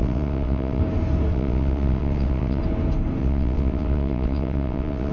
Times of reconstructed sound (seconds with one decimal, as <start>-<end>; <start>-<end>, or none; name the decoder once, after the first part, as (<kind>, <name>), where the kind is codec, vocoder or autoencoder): 0.0-0.8 (vocoder, WaveNeXt); 1.3-2.6; 3.2-5.1